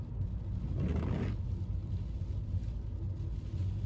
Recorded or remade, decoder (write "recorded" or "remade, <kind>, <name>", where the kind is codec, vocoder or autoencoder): recorded